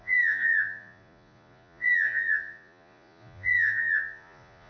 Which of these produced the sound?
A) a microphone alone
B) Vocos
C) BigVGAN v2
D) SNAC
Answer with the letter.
B